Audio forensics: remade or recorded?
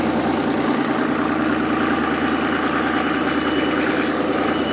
recorded